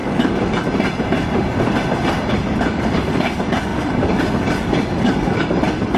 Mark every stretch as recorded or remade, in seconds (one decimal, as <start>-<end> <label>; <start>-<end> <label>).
0.0-2.3 recorded; 2.3-6.0 remade

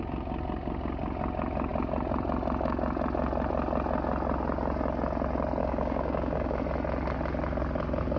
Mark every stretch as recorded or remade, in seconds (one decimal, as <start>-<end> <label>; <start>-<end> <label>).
0.0-5.6 recorded; 5.6-6.6 remade; 6.6-8.2 recorded

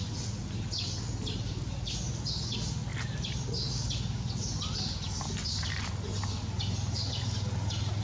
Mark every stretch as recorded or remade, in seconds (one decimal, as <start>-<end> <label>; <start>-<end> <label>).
0.0-8.0 recorded

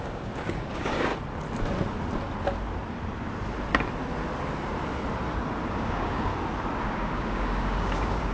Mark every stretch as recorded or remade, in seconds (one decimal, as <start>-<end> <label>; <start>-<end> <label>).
0.0-1.1 remade; 1.1-5.7 recorded; 5.7-6.3 remade; 6.3-6.8 recorded; 6.8-8.3 remade